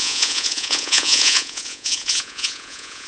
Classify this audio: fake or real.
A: fake